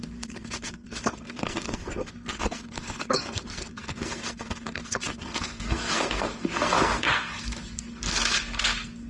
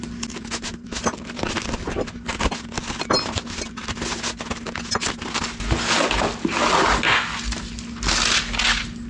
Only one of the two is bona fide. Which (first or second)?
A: second